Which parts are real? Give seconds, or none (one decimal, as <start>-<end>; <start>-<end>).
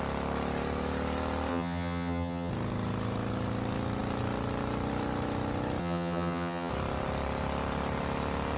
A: 0.0-1.5; 2.5-5.8; 6.7-8.6